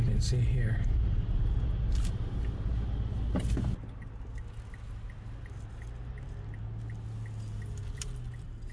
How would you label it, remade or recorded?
recorded